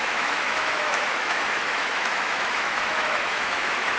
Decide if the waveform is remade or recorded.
remade